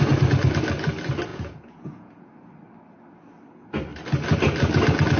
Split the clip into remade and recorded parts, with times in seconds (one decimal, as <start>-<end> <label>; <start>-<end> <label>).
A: 0.0-1.3 recorded; 1.3-2.3 remade; 2.3-5.2 recorded